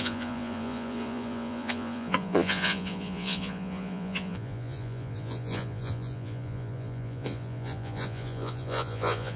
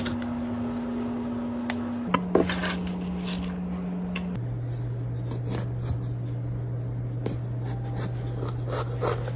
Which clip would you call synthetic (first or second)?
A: first